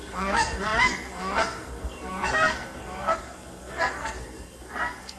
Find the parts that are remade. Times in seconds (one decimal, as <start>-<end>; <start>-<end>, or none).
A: 0.0-5.2